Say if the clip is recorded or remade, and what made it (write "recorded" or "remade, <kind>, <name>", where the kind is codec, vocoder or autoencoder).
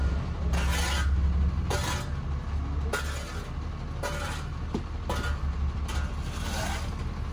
recorded